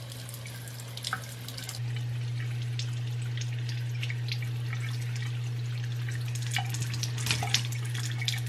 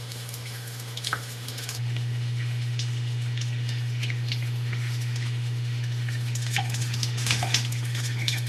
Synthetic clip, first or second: second